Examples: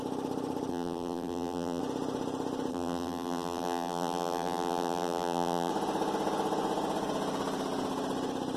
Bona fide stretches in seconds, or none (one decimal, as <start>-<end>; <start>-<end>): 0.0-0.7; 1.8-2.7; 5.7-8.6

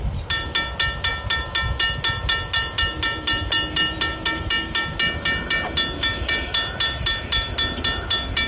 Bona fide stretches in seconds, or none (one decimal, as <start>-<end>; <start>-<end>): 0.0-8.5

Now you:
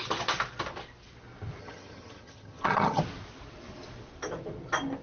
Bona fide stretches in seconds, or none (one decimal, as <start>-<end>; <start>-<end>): 0.0-1.6; 3.0-5.0

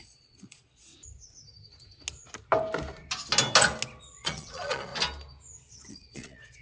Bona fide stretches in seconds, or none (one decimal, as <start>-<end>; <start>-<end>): 0.9-4.0; 4.9-5.9

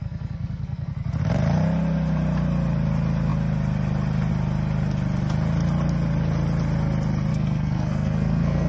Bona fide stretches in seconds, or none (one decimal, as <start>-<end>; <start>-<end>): 0.9-7.3

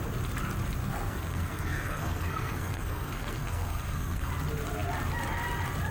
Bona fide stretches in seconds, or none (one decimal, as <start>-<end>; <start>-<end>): 0.0-0.8; 4.3-5.9